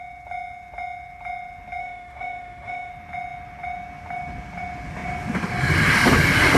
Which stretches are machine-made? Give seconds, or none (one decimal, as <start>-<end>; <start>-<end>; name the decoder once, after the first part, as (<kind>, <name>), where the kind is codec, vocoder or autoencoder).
1.8-2.9 (autoencoder, DAC-VAE)